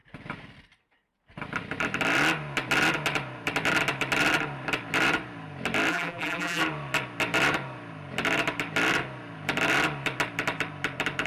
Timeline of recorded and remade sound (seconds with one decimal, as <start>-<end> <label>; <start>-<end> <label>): 0.0-5.9 recorded; 5.9-6.6 remade; 6.6-11.3 recorded